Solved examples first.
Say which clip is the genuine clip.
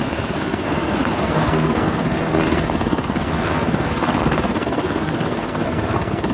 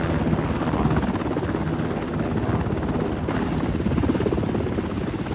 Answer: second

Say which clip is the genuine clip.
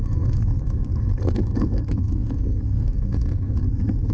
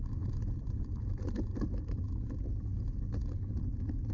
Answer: second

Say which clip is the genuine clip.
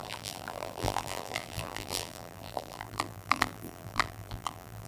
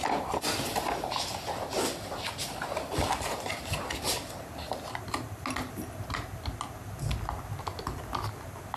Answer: second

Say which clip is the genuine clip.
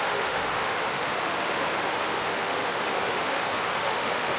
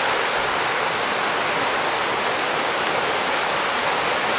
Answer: second